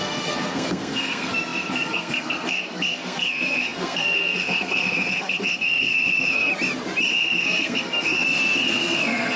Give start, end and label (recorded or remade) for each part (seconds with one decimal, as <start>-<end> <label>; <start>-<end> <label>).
0.0-6.5 remade; 6.5-7.1 recorded; 7.1-9.4 remade